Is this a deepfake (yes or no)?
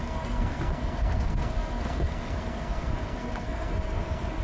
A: yes